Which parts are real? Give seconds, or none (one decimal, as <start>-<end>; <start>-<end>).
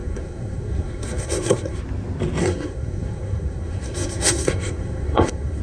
1.8-2.4